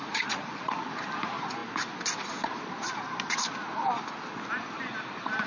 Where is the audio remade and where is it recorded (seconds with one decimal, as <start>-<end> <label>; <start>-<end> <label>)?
0.0-5.5 recorded